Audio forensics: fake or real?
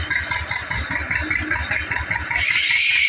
real